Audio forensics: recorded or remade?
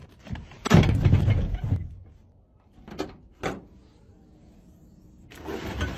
recorded